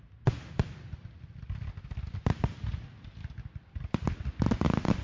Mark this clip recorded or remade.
recorded